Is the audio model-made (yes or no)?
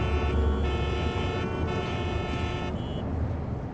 no